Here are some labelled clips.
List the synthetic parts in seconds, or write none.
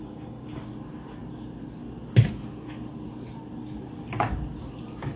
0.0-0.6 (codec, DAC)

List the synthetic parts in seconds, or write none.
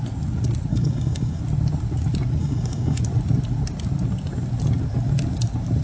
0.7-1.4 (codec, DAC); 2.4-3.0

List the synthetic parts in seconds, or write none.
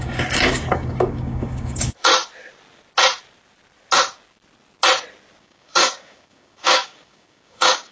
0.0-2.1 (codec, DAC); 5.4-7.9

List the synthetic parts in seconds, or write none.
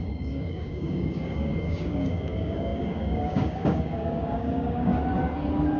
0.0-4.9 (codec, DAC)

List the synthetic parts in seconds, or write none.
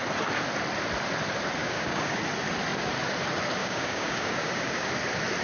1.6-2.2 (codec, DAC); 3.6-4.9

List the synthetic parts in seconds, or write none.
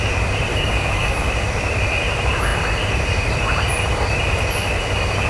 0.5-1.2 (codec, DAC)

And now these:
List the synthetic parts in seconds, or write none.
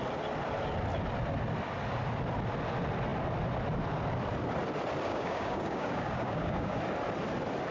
5.1-6.8 (codec, DAC)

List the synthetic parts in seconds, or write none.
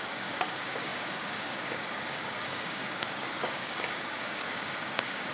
0.0-5.3 (codec, DAC)